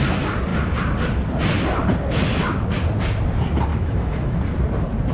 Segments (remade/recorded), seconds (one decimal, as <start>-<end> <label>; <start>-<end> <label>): 0.0-3.7 recorded; 3.7-4.4 remade; 4.4-5.1 recorded